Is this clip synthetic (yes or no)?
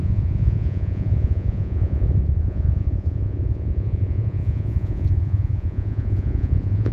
yes